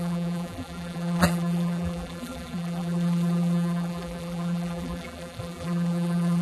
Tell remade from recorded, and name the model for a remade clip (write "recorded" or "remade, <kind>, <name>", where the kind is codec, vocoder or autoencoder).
remade, vocoder, BigVGAN v2